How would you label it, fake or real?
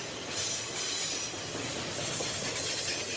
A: real